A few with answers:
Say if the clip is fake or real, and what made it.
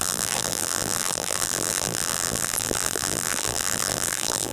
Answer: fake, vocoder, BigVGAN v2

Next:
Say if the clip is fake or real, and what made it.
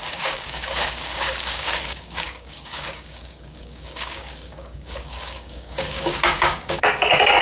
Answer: fake, codec, DAC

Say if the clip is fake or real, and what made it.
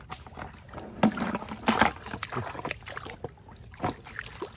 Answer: real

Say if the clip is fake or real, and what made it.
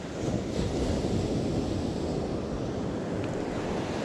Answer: real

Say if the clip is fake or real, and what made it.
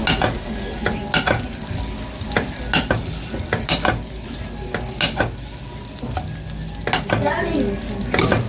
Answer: real